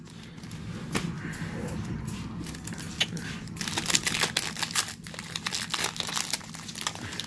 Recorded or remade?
recorded